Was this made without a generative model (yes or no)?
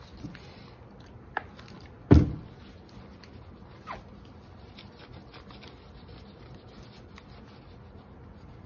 yes